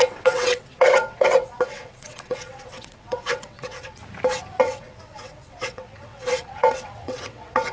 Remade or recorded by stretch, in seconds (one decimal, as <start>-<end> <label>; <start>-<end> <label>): 0.0-4.0 remade; 4.0-4.6 recorded; 4.6-7.7 remade